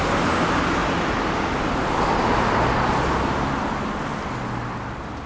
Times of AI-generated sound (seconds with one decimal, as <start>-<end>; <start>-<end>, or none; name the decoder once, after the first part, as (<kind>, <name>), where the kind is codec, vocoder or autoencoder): none